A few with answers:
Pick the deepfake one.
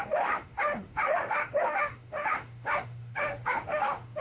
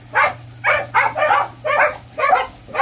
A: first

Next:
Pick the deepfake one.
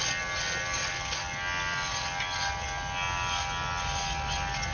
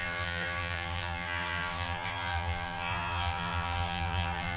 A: second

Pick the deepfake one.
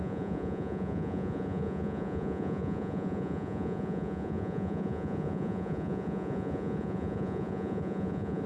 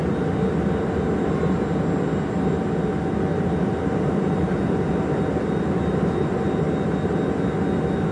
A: first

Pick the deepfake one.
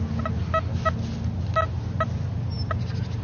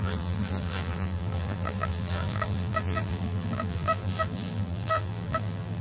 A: second